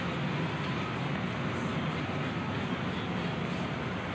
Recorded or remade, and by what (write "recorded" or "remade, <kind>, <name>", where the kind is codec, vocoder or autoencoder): recorded